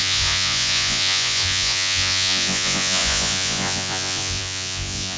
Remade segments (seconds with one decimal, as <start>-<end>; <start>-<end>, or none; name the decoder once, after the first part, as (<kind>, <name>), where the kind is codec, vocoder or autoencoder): 0.0-5.2 (vocoder, Vocos)